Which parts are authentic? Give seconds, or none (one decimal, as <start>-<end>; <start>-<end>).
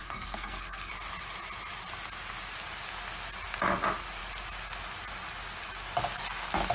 0.9-6.7